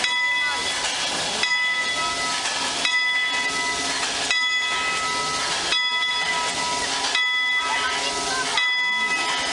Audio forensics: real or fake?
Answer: real